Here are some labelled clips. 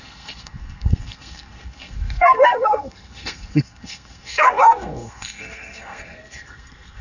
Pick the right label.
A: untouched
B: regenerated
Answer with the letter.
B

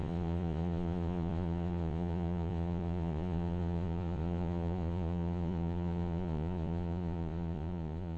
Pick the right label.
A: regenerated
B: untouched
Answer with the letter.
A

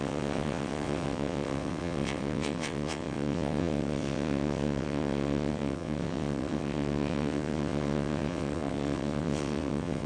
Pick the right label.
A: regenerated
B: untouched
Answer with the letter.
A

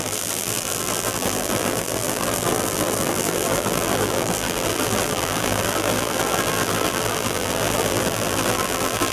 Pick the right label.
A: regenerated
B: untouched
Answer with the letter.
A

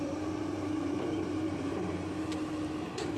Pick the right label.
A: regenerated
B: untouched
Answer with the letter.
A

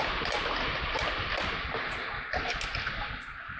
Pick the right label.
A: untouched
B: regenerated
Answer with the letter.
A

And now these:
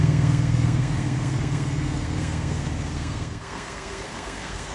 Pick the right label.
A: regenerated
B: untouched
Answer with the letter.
A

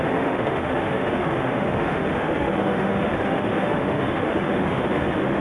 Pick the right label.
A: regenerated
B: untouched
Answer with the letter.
A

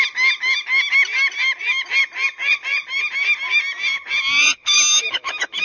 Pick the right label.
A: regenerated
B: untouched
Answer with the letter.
B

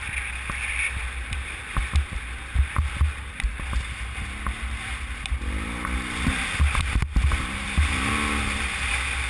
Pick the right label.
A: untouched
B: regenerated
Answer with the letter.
A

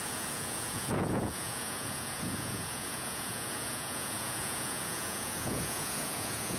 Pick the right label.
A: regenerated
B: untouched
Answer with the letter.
A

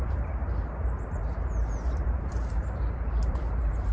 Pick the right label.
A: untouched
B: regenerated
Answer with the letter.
B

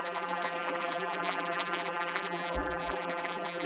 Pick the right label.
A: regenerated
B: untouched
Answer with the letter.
A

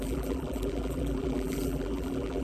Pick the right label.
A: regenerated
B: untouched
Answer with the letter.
A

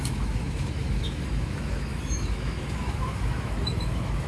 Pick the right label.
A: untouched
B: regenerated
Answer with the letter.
B